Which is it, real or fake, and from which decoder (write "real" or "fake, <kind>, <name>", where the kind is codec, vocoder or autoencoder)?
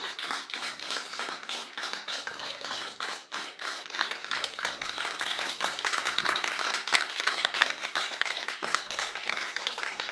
fake, codec, SNAC